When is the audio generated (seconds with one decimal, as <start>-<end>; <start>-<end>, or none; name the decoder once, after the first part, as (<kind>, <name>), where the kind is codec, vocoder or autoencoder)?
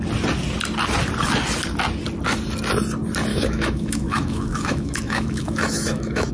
3.3-6.3 (autoencoder, DAC-VAE)